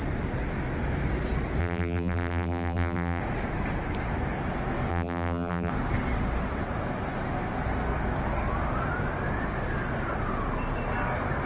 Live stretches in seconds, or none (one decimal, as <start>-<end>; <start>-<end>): 0.0-1.6; 3.2-4.9; 5.7-11.5